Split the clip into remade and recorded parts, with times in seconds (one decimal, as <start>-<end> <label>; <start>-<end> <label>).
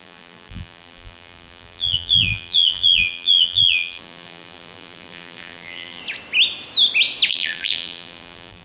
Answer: 0.0-6.0 remade; 6.0-7.3 recorded; 7.3-8.6 remade